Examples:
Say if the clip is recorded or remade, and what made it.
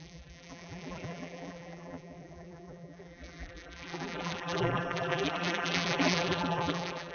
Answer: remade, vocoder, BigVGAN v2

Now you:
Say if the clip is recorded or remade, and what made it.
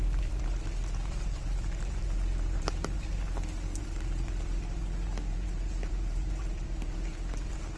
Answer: remade, vocoder, BigVGAN v2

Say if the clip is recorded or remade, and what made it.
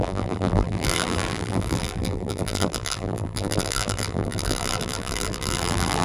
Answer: remade, vocoder, BigVGAN v2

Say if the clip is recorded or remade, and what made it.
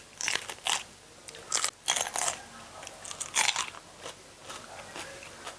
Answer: recorded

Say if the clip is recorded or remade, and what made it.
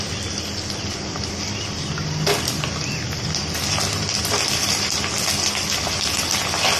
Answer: recorded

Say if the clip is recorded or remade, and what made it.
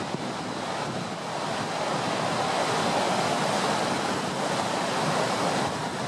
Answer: recorded